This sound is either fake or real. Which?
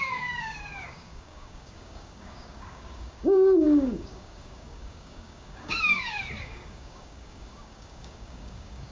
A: fake